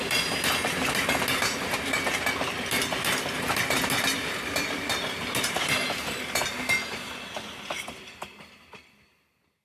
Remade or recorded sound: recorded